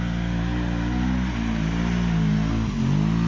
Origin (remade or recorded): recorded